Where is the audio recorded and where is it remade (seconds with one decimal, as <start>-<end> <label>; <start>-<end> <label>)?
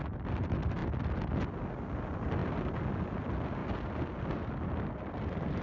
0.0-5.6 recorded